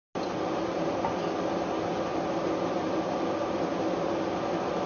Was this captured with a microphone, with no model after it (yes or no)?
yes